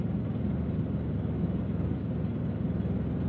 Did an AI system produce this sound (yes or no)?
no